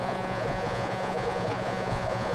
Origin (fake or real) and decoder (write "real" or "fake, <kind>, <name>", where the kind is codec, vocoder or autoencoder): fake, vocoder, Vocos